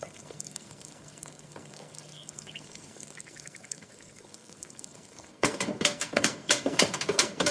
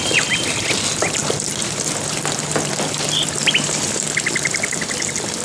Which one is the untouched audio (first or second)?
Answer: second